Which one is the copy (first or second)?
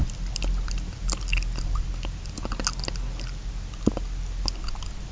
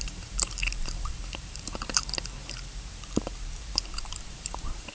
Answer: second